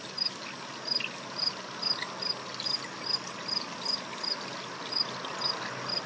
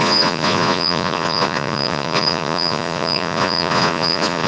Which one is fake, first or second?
second